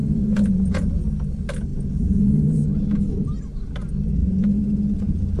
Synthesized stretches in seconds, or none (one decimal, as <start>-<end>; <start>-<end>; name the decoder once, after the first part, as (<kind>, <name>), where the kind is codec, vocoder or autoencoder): 0.0-1.0 (vocoder, Vocos); 1.7-2.6; 4.2-5.4